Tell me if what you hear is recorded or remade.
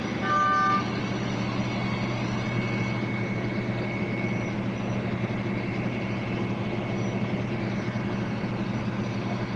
recorded